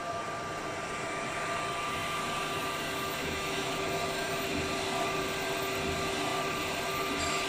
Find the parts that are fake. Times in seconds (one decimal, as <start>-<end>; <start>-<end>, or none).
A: 3.2-4.4